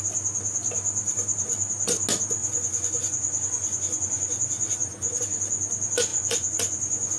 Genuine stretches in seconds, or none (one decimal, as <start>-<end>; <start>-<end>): 0.0-2.4; 5.2-6.1